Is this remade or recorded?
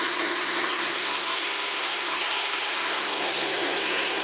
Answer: remade